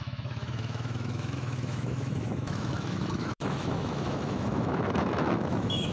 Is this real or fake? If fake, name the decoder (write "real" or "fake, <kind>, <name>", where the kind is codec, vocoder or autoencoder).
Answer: fake, autoencoder, DAC-VAE